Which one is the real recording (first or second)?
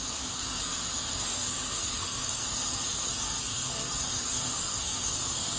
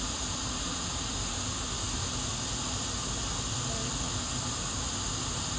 second